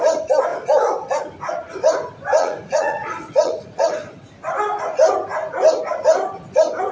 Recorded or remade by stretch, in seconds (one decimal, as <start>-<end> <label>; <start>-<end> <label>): 0.0-2.4 recorded; 2.4-3.9 remade; 3.9-6.9 recorded